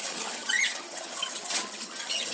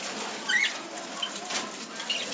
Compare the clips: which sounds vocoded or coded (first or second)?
first